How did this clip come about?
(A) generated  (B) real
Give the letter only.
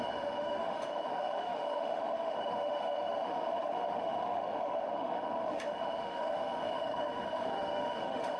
A